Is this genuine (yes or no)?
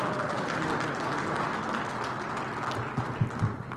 yes